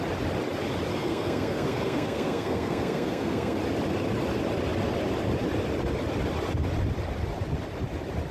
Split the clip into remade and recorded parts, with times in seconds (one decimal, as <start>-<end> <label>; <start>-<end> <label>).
0.0-0.9 recorded; 0.9-3.6 remade; 3.6-8.3 recorded